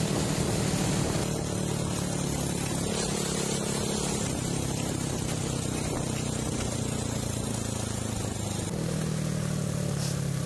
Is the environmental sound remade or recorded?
recorded